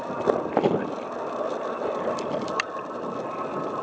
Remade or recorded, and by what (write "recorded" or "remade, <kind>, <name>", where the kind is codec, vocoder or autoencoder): recorded